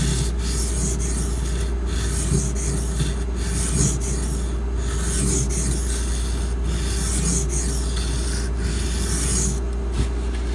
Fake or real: real